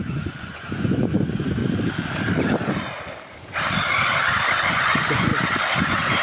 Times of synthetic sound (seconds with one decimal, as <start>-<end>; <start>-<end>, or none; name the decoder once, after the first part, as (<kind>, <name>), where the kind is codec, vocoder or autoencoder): 0.0-1.6 (vocoder, Vocos); 4.7-5.3; 5.8-6.2